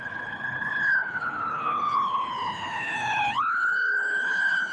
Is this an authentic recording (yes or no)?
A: no